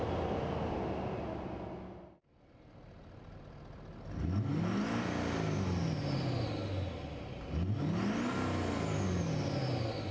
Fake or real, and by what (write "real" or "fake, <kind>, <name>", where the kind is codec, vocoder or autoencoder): real